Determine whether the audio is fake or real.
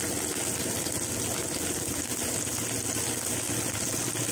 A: real